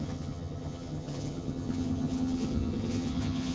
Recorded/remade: remade